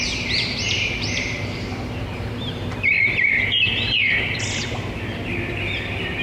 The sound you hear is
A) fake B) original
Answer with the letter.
A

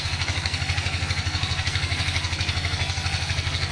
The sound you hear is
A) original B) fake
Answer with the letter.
B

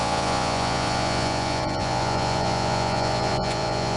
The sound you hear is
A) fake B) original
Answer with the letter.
A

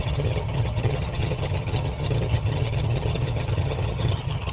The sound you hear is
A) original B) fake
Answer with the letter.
B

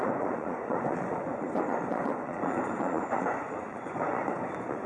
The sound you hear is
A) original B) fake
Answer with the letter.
B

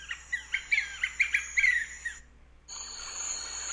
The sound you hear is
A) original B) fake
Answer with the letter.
A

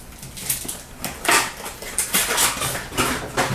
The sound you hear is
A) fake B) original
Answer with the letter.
B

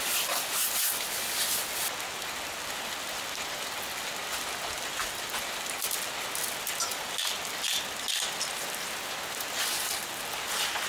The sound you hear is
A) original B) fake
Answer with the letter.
A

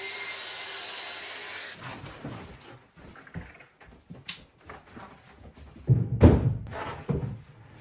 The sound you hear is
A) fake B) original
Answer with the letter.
B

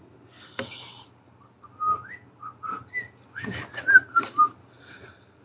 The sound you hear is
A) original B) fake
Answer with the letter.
A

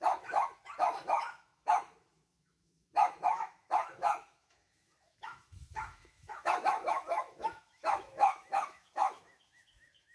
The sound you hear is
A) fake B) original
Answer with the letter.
A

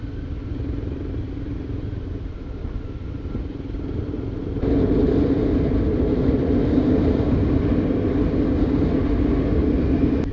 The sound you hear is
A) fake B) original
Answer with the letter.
B